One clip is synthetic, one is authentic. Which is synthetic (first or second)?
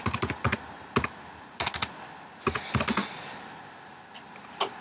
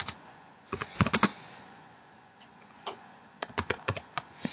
second